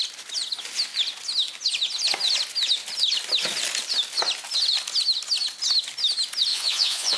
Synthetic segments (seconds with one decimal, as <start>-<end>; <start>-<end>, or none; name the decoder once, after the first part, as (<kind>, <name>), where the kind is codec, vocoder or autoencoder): 6.5-7.2 (vocoder, Vocos)